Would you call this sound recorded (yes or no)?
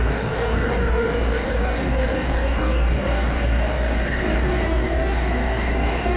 no